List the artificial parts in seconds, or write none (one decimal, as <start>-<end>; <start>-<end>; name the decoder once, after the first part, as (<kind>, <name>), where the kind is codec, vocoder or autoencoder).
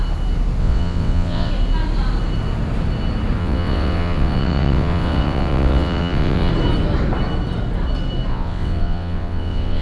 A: 0.6-1.5 (vocoder, WaveNeXt); 3.4-6.5; 8.3-9.8